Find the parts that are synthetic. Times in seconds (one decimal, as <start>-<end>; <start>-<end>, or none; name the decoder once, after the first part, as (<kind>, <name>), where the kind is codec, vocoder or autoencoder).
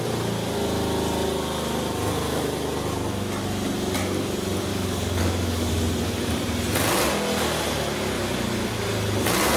4.7-5.7 (codec, DAC)